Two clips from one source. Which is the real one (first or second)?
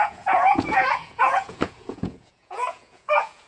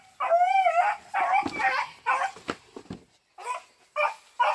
second